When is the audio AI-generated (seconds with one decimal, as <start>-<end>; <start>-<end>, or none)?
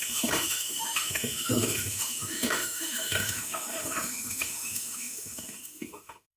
0.0-6.4